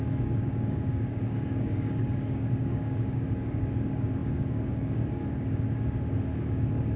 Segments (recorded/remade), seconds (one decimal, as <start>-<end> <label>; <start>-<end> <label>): 0.0-7.0 remade